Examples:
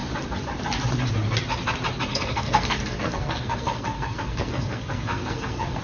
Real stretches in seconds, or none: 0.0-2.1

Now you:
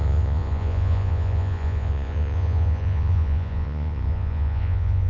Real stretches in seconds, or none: none

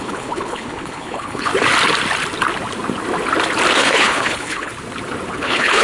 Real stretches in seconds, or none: 1.5-3.7; 4.7-5.3

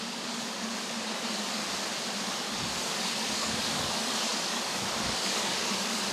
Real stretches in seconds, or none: 1.6-2.2